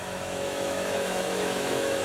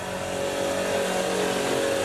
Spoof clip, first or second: first